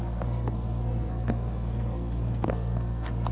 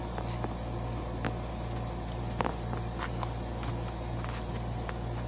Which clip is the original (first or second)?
second